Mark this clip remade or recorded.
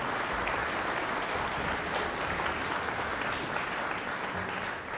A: recorded